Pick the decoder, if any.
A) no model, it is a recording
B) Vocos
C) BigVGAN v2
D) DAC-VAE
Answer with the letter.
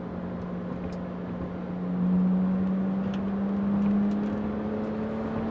A